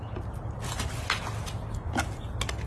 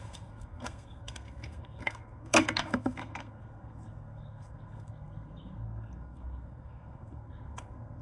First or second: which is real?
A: first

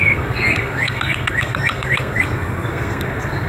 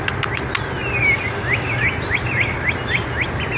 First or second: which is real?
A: second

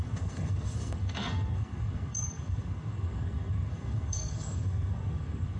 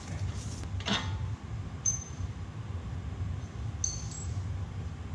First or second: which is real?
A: second